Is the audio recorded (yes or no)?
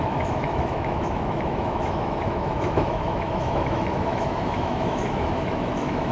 no